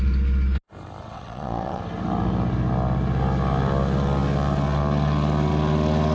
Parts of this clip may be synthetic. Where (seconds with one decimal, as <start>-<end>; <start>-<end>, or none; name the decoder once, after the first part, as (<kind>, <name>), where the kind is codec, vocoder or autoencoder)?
1.0-1.8 (vocoder, WaveNeXt)